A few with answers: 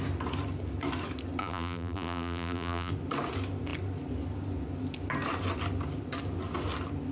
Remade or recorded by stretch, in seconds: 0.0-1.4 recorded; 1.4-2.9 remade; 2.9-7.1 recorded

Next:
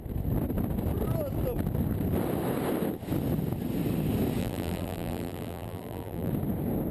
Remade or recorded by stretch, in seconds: 0.0-4.4 recorded; 4.4-6.3 remade; 6.3-6.9 recorded

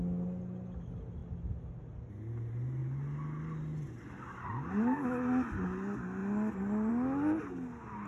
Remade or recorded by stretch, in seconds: 0.0-8.1 recorded

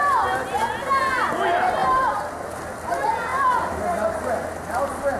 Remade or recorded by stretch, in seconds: 0.0-5.2 recorded

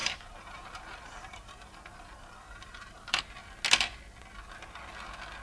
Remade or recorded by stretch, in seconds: 0.0-3.2 remade; 3.2-5.4 recorded

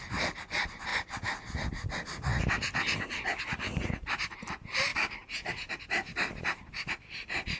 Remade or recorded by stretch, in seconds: 0.0-4.9 recorded; 4.9-6.6 remade; 6.6-7.6 recorded

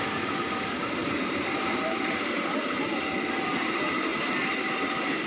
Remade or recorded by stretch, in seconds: 0.0-1.0 recorded; 1.0-2.9 remade; 2.9-4.1 recorded; 4.1-4.6 remade; 4.6-5.3 recorded

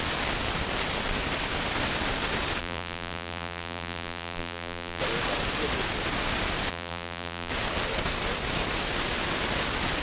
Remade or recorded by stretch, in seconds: 0.0-2.6 recorded; 2.6-5.0 remade; 5.0-6.7 recorded; 6.7-7.5 remade; 7.5-10.0 recorded